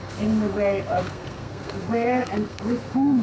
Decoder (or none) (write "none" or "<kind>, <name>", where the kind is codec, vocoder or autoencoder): codec, SNAC